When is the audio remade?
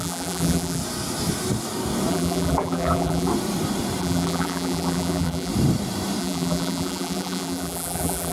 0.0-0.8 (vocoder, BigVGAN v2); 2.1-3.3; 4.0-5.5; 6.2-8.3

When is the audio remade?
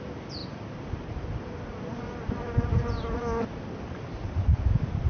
none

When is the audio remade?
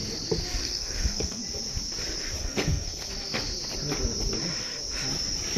0.6-1.4 (codec, SNAC); 2.4-3.1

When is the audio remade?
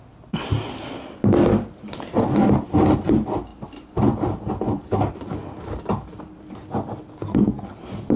7.2-7.7 (codec, SNAC)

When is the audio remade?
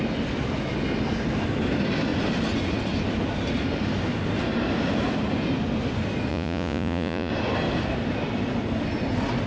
6.3-7.3 (vocoder, Vocos)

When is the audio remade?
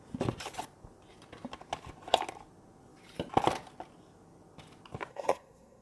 5.1-5.8 (codec, SNAC)